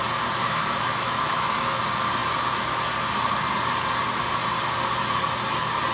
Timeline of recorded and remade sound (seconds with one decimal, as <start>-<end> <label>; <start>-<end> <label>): 0.0-0.4 recorded; 0.4-1.8 remade; 1.8-5.9 recorded